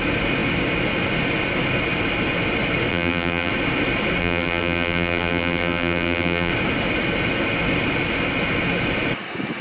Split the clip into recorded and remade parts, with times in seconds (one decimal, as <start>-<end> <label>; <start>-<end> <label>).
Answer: 0.0-2.9 recorded; 2.9-3.5 remade; 3.5-4.2 recorded; 4.2-6.5 remade; 6.5-9.6 recorded